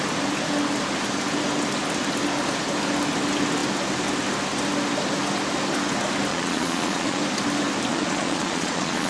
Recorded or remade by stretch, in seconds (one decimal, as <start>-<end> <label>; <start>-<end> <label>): 0.0-6.3 recorded; 6.3-7.2 remade; 7.2-7.9 recorded; 7.9-9.1 remade